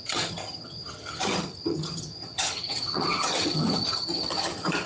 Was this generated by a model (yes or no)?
yes